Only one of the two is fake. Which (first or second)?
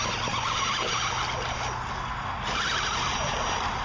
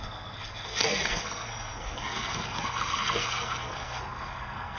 second